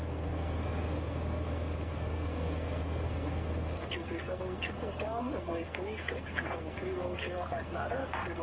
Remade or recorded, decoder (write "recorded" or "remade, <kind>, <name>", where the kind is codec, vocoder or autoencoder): remade, codec, SNAC